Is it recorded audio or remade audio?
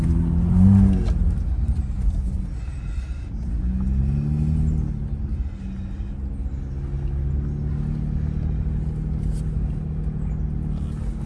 recorded